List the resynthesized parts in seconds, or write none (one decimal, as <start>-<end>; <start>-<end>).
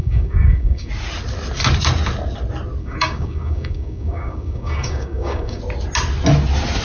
0.0-0.9; 2.8-5.6